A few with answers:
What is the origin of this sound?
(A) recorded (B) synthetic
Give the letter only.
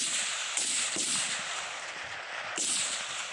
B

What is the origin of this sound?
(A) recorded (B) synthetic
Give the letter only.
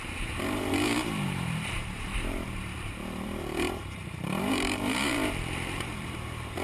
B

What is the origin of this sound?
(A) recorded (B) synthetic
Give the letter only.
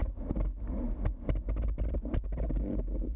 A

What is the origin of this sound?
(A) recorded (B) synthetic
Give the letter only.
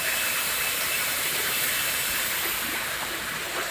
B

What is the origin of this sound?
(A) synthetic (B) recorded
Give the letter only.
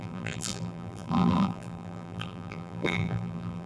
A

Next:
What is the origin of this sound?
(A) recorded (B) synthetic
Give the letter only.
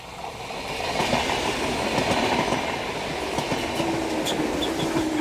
A